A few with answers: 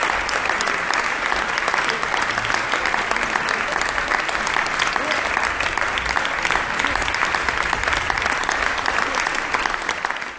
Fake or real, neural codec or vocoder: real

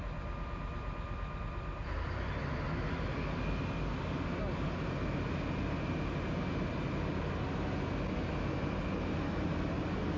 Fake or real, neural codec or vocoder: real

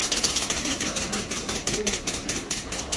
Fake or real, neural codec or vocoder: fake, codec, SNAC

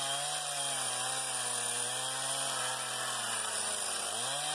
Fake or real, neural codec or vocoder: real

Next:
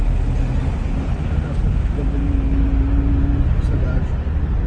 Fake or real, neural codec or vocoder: real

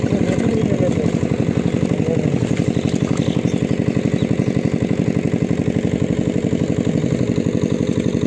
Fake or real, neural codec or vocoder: real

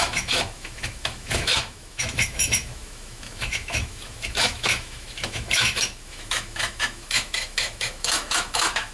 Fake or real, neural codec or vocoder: fake, autoencoder, DAC-VAE